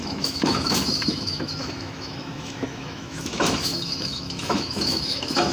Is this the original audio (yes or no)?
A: no